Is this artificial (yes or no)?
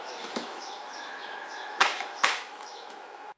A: yes